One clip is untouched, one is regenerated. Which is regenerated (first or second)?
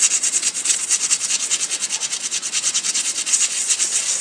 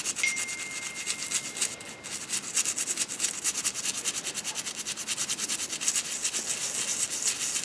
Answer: first